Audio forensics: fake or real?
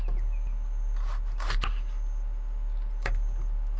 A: real